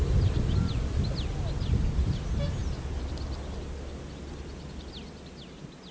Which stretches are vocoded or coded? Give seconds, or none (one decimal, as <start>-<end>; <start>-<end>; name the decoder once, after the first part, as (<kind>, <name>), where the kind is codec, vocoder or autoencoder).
none